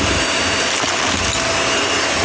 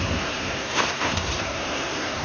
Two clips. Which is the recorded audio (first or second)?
first